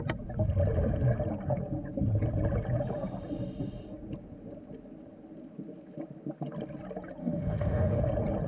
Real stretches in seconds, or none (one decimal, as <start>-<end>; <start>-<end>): 0.0-7.2; 8.0-8.5